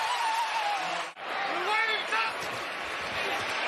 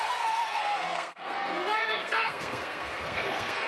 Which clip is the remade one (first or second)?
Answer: second